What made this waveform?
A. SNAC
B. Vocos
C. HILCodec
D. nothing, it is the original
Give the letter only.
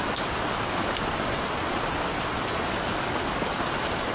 D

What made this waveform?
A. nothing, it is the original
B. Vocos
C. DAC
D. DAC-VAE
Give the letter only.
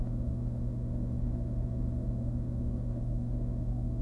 D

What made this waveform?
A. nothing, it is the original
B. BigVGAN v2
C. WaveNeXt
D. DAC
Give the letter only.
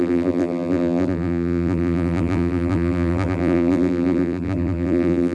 B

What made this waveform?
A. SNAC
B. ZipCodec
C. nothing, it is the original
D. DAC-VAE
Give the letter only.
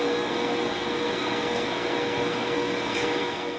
A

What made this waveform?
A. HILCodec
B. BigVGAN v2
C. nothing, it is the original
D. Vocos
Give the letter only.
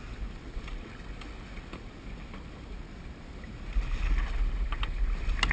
C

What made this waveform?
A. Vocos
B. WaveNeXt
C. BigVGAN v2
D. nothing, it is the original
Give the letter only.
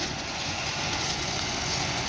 A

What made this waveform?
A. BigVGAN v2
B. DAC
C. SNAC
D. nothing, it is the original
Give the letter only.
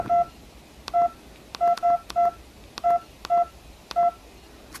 D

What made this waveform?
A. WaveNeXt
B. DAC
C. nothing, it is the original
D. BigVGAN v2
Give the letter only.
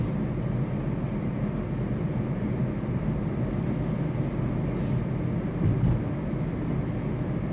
C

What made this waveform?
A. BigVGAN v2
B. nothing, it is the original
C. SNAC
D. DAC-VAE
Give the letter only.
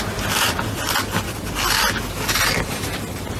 B